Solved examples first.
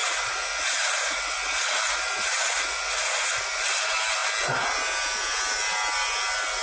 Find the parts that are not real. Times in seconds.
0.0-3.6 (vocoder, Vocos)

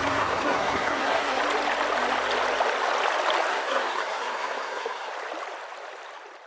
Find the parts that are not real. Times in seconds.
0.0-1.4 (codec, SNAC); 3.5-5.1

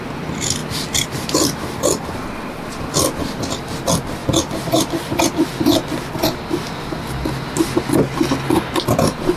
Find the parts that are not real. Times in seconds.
none

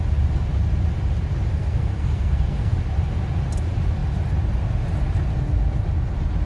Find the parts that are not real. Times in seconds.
1.5-2.7 (codec, SNAC)

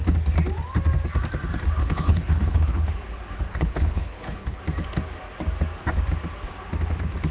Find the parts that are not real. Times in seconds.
1.8-2.9 (codec, HILCodec); 3.5-4.6

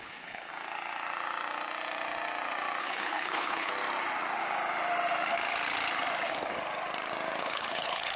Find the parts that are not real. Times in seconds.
0.0-0.5 (codec, HILCodec); 2.8-3.7; 7.4-8.2

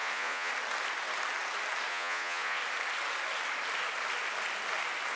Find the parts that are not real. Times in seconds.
0.0-0.5 (vocoder, Vocos); 1.9-2.6